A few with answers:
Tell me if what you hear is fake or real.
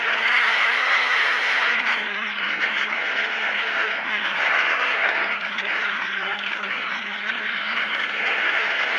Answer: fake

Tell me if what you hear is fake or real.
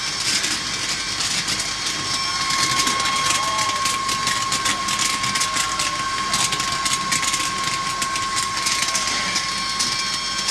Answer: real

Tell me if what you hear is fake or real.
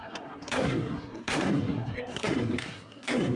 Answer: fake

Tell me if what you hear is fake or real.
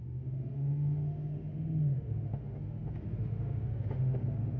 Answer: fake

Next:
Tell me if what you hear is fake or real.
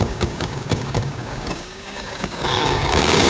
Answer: fake